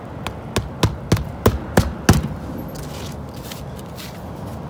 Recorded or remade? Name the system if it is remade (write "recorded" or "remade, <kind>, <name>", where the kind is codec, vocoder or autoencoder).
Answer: recorded